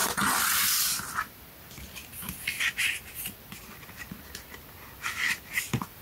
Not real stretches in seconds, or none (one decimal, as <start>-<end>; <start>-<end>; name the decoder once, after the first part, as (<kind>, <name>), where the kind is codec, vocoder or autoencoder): none